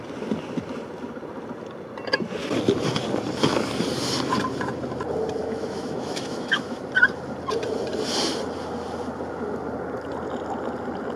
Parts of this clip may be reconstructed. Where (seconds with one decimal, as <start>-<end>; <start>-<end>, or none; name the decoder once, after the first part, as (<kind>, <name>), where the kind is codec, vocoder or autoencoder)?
5.4-6.8 (autoencoder, DAC-VAE)